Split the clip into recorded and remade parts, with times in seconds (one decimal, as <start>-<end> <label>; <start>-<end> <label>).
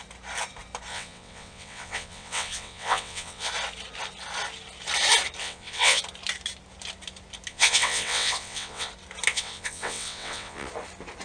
0.0-0.9 recorded; 0.9-3.5 remade; 3.5-5.4 recorded; 5.4-6.0 remade; 6.0-7.5 recorded; 7.5-8.9 remade; 8.9-9.3 recorded; 9.3-10.7 remade; 10.7-11.2 recorded